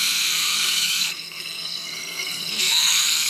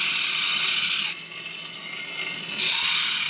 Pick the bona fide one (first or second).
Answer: second